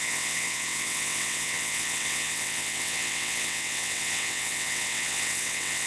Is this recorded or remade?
remade